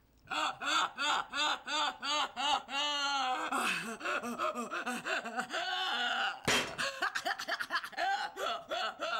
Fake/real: real